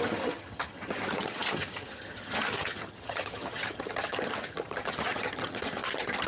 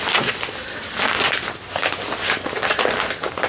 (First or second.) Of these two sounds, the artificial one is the first